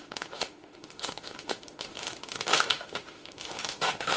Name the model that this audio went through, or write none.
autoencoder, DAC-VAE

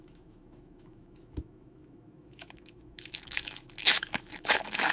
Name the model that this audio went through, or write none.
autoencoder, DAC-VAE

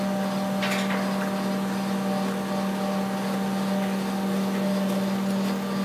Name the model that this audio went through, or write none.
none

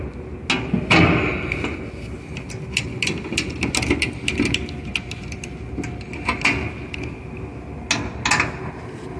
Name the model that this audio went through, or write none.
none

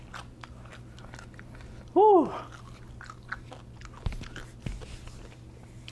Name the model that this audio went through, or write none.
none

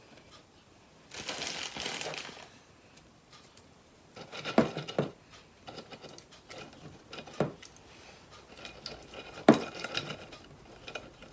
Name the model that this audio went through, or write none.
none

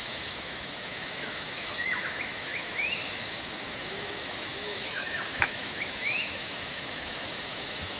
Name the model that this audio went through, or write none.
autoencoder, DAC-VAE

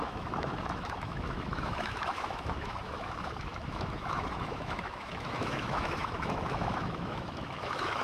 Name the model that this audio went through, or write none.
autoencoder, DAC-VAE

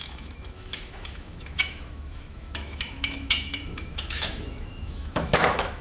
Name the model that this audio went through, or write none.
autoencoder, DAC-VAE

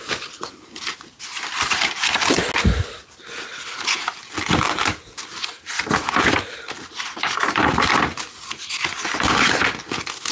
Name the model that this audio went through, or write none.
none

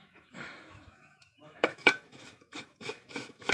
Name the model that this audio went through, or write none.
autoencoder, DAC-VAE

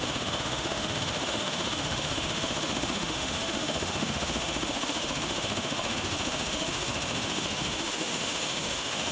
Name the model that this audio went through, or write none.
autoencoder, DAC-VAE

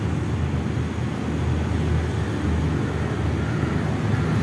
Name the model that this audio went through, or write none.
none